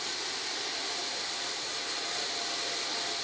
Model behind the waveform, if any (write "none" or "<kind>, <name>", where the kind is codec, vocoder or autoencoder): none